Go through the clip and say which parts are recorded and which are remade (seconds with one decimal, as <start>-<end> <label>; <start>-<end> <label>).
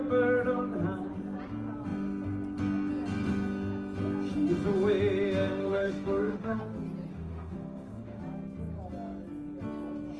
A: 0.0-5.6 recorded; 5.6-6.6 remade; 6.6-7.1 recorded; 7.1-8.2 remade; 8.2-10.2 recorded